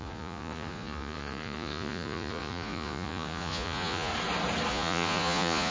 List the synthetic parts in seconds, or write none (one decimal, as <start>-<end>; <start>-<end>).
0.0-4.1; 4.7-5.7